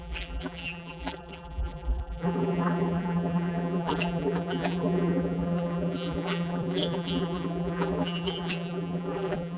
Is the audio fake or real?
fake